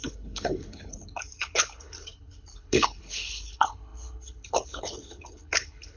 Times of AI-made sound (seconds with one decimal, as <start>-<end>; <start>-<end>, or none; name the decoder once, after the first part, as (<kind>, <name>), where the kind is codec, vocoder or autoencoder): 0.0-6.0 (codec, HILCodec)